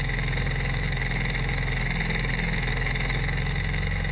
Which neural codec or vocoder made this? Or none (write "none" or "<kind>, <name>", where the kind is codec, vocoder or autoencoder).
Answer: autoencoder, DAC-VAE